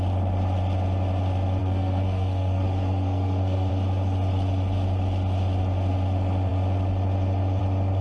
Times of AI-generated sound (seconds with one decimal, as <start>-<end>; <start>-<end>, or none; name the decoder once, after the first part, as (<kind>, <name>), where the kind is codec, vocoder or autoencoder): 1.6-3.7 (codec, SNAC)